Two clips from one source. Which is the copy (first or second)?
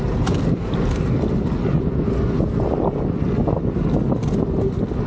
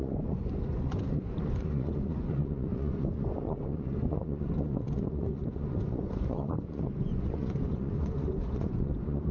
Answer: second